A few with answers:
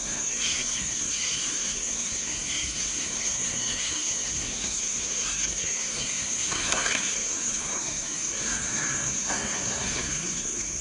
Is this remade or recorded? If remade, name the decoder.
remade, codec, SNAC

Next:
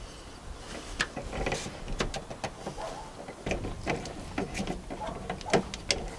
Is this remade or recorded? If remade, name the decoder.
recorded